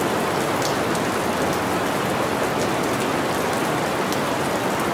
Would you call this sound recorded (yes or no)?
yes